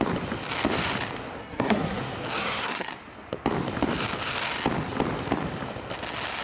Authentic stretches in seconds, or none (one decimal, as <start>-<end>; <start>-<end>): 0.0-1.4; 2.0-2.4; 2.9-6.4